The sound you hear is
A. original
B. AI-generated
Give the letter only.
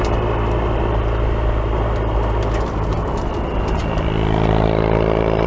A